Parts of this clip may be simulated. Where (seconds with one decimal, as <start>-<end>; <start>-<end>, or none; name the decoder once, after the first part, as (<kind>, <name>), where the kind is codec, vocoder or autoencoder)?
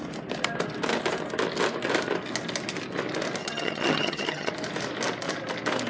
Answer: 3.4-4.5 (vocoder, HiFi-GAN)